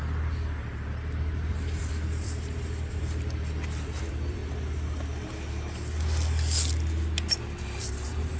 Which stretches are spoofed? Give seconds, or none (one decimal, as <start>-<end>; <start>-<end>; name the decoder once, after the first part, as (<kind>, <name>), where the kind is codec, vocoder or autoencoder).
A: 1.5-4.4 (vocoder, BigVGAN v2); 7.8-8.4

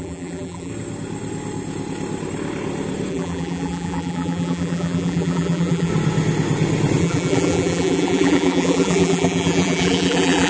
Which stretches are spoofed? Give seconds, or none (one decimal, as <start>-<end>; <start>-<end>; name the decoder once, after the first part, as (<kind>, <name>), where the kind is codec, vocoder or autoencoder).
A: 0.0-0.7 (vocoder, BigVGAN v2); 3.1-5.9; 7.0-10.5

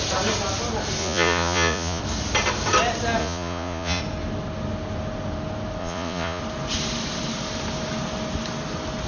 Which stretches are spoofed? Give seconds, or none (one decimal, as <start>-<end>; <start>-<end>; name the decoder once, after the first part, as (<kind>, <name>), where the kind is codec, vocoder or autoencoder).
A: 1.0-2.0 (vocoder, Vocos); 3.2-4.0; 5.8-6.4

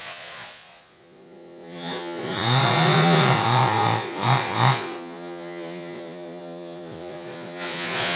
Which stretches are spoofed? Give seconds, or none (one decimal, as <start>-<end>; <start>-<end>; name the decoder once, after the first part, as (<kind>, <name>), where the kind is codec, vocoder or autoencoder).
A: 0.0-8.2 (vocoder, Vocos)

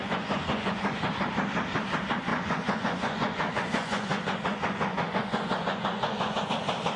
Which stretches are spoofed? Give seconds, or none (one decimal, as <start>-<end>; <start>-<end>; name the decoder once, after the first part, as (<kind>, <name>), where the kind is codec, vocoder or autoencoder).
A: 0.0-1.1 (vocoder, Vocos); 2.3-6.5

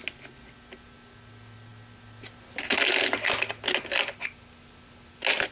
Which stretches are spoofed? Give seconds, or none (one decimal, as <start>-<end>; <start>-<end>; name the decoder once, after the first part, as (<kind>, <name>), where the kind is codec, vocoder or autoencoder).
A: none